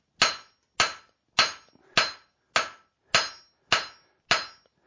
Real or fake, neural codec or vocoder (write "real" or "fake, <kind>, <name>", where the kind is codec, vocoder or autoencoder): real